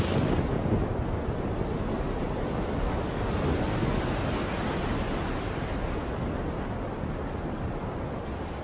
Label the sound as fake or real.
real